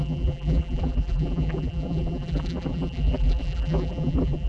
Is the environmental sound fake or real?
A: fake